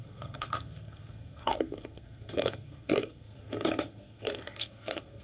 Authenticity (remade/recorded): remade